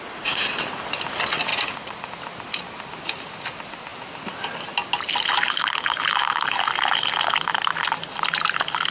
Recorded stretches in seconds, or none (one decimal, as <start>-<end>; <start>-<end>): 0.0-1.5; 2.1-8.9